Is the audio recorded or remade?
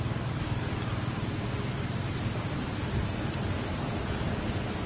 recorded